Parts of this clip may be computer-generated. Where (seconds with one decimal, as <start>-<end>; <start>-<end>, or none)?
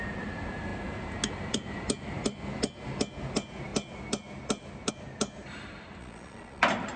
6.0-6.6